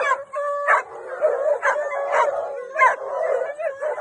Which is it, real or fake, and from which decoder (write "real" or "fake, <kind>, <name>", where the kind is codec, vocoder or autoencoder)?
real